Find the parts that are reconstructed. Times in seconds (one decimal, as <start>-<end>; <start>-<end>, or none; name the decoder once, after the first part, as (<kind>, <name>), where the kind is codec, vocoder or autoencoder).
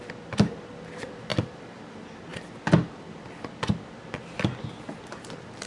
1.3-1.9 (vocoder, BigVGAN v2)